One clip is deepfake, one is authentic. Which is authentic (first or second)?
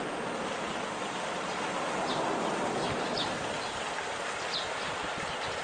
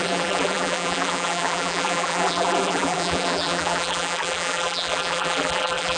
first